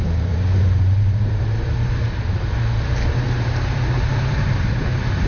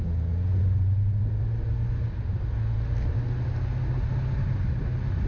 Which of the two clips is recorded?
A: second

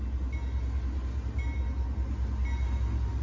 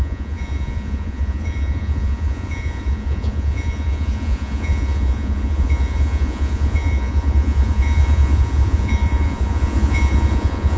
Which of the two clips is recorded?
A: first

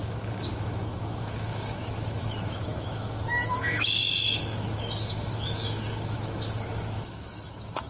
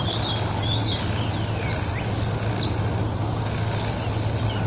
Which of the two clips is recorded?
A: second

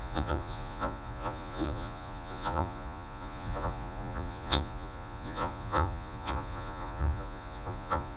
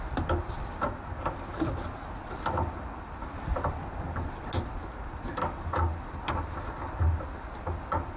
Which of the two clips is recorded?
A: second